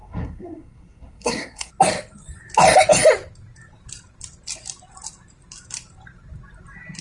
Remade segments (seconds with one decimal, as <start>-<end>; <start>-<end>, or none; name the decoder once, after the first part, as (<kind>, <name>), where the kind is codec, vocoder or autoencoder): 0.0-1.7 (codec, SNAC)